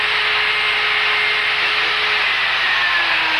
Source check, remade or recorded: recorded